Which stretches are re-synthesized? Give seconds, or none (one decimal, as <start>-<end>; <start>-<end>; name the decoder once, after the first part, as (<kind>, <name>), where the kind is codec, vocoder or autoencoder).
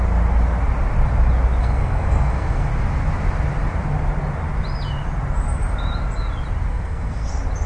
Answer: 1.6-2.7 (codec, SNAC); 6.7-7.3